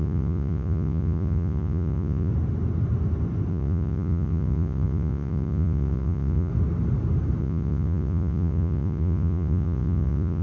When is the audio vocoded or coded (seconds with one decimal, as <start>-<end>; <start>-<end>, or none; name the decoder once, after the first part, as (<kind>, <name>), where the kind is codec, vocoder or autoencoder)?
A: 0.0-2.3 (vocoder, Vocos); 3.5-6.5; 7.4-10.4